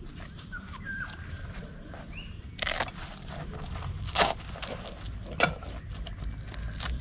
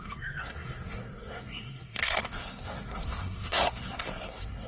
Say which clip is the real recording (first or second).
first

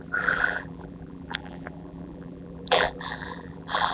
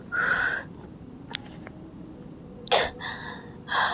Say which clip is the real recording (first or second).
second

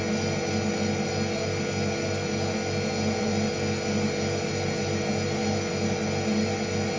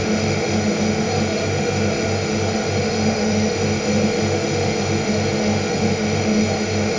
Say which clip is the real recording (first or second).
first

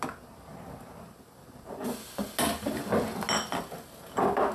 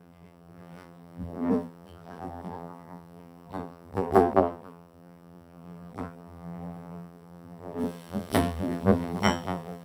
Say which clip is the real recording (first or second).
first